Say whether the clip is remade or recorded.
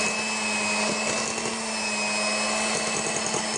recorded